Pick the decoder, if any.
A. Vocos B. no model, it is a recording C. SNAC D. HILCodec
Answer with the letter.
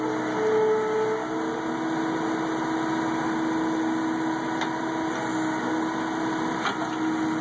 B